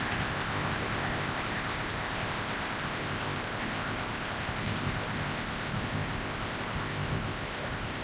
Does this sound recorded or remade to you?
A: remade